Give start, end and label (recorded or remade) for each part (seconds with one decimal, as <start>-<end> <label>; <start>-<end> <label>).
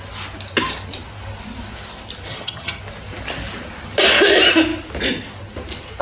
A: 0.0-2.3 recorded; 2.3-2.8 remade; 2.8-6.0 recorded